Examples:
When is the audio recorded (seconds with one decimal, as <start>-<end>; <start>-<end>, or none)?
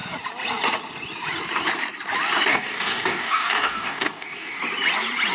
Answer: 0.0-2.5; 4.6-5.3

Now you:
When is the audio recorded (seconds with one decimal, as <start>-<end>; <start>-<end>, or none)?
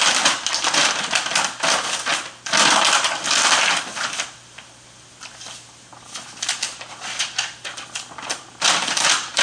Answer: 0.0-9.4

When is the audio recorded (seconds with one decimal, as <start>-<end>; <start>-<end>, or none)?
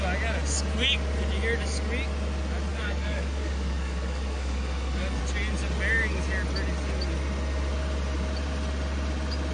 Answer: 0.0-2.7; 5.2-9.5